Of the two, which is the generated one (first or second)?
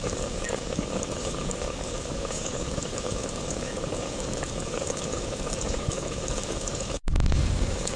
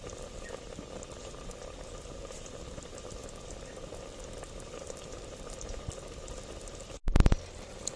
first